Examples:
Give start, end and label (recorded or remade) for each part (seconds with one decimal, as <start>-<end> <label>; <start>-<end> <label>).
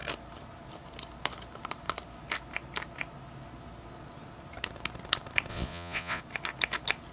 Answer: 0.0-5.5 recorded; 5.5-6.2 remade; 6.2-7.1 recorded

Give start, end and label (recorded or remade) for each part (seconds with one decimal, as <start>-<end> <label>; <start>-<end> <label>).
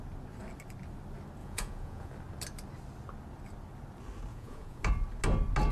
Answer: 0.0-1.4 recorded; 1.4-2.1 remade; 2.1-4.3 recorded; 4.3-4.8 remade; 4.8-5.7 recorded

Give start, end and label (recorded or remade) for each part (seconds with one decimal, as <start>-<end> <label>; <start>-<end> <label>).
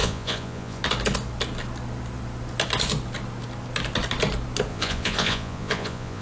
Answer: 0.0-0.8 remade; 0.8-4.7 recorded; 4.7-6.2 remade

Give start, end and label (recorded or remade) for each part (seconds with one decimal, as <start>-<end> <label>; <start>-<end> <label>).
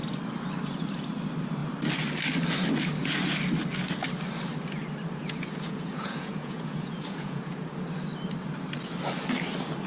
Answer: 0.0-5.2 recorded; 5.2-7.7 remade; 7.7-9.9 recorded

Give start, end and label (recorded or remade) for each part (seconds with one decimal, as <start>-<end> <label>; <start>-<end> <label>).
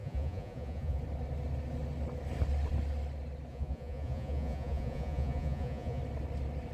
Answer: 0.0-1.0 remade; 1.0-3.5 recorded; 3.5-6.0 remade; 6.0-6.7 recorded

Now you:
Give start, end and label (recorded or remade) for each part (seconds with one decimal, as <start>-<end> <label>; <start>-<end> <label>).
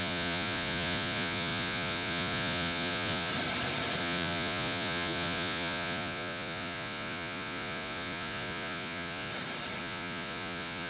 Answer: 0.0-3.3 remade; 3.3-4.0 recorded; 4.0-9.3 remade; 9.3-9.8 recorded; 9.8-10.9 remade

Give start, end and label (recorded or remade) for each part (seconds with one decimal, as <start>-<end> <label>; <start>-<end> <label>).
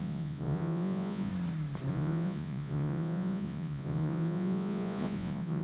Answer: 0.0-1.3 remade; 1.3-1.9 recorded; 1.9-5.6 remade